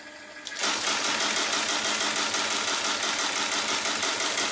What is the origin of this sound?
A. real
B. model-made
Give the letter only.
A